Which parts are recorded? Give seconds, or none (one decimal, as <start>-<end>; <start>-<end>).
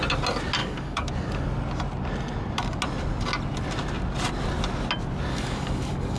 0.0-0.6; 1.1-5.3